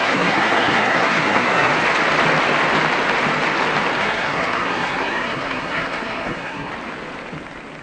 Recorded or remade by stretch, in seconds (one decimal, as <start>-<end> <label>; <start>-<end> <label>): 0.0-1.7 remade; 1.7-4.0 recorded; 4.0-6.7 remade; 6.7-7.8 recorded